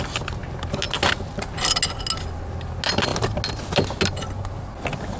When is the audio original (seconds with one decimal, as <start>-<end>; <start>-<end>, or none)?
0.0-5.2